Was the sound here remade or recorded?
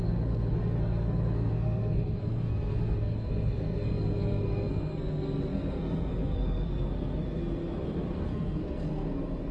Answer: remade